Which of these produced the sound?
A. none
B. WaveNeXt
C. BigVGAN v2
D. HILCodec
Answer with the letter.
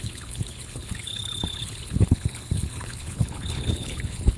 D